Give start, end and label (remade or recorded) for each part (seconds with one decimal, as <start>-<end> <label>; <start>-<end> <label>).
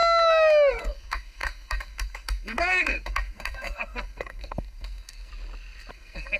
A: 0.0-0.7 recorded; 0.7-5.3 remade; 5.3-5.9 recorded; 5.9-6.4 remade